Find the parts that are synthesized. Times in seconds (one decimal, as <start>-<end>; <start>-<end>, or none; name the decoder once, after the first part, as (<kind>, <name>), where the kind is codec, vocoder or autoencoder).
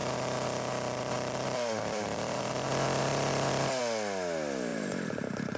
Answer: 0.0-2.7 (vocoder, BigVGAN v2); 4.7-5.6